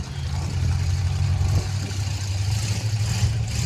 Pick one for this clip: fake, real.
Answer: real